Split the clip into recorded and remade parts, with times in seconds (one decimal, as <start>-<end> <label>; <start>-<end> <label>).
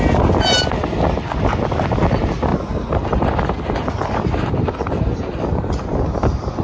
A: 0.0-6.6 recorded